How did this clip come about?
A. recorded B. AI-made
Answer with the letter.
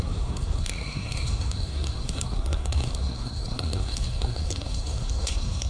B